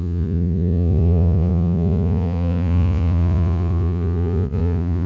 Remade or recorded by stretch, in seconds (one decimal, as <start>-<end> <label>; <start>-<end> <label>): 0.0-5.1 remade